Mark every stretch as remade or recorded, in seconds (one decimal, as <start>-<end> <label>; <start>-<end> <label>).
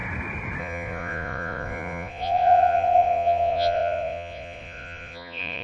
0.0-0.6 recorded; 0.6-5.6 remade